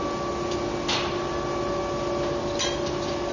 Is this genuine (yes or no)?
yes